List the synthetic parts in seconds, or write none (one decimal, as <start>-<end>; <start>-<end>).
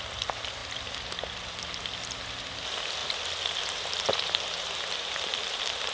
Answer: none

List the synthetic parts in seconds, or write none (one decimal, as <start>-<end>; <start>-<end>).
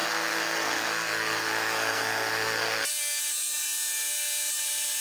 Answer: 0.0-2.9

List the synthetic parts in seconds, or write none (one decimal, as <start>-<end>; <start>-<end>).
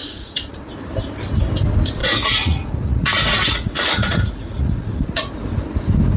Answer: 0.0-0.7; 2.0-5.3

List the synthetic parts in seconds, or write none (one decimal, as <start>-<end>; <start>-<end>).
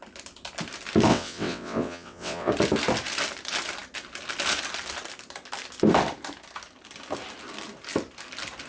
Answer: 1.1-2.5